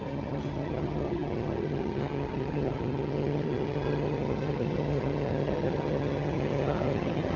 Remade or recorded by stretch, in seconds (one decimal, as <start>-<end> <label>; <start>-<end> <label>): 0.0-7.4 remade